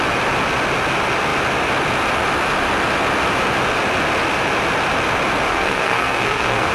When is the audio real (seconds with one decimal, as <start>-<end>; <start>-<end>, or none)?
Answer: 0.0-5.5